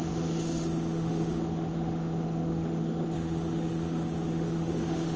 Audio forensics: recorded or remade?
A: remade